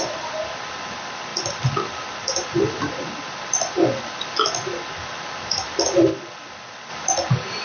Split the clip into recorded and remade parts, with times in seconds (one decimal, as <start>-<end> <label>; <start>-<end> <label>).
0.0-7.6 recorded